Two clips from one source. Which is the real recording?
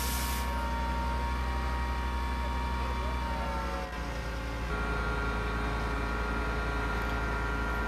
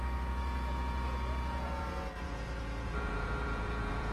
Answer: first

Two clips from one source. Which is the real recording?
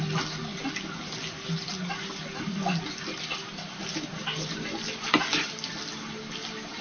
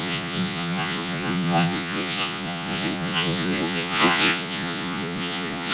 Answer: first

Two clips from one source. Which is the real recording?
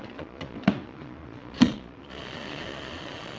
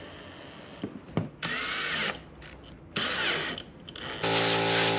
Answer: second